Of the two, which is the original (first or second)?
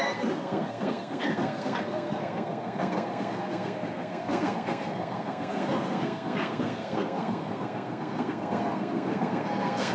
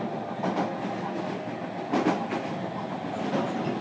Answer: second